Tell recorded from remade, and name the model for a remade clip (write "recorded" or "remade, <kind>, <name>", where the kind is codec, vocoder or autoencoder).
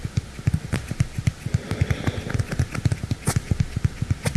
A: recorded